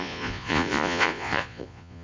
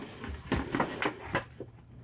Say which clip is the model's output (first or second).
first